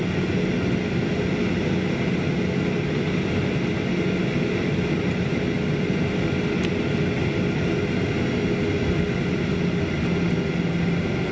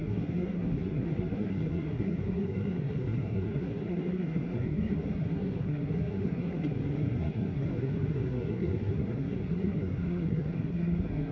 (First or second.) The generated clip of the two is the second